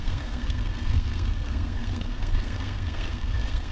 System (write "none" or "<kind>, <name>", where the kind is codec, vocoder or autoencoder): codec, SNAC